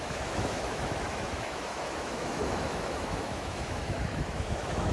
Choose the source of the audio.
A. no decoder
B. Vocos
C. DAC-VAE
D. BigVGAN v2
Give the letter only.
C